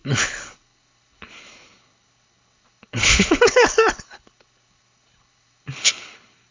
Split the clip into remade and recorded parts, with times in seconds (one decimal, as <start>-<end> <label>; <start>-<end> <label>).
0.0-6.5 remade